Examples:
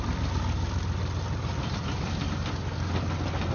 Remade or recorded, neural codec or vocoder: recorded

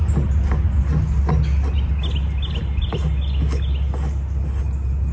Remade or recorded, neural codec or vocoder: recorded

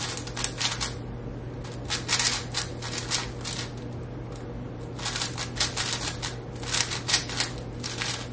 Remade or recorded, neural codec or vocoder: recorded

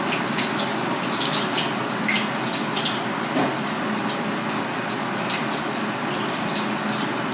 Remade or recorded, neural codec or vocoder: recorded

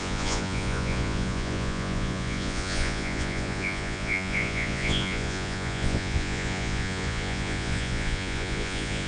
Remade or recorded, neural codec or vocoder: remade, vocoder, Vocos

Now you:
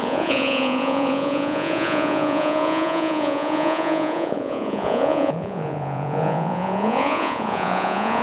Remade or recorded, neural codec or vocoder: remade, vocoder, Vocos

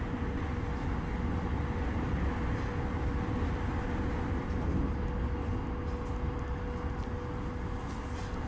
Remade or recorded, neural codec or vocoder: recorded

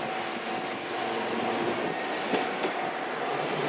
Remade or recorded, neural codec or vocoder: recorded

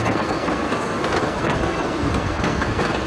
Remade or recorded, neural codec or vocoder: remade, codec, SNAC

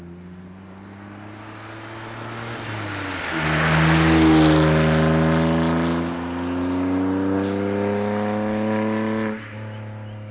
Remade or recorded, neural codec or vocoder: recorded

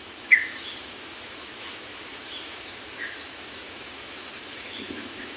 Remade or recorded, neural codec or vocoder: remade, autoencoder, DAC-VAE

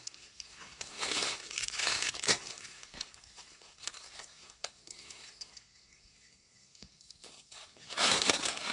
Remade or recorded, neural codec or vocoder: remade, codec, SNAC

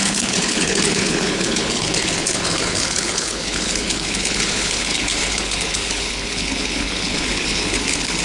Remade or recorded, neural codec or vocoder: remade, codec, HILCodec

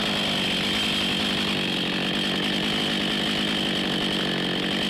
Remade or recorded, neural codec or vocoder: recorded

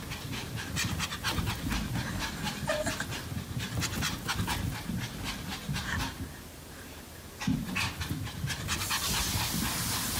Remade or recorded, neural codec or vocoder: recorded